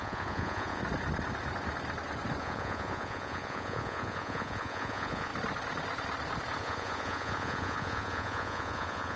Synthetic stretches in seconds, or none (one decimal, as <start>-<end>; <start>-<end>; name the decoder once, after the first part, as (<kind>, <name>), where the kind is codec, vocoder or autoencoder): 0.0-0.8 (vocoder, Vocos); 2.4-5.3; 6.6-9.2